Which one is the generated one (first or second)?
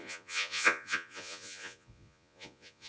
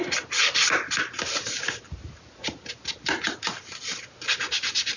first